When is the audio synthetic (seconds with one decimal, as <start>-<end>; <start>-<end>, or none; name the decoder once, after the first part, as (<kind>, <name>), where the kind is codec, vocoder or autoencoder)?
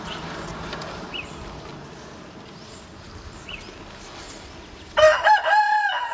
none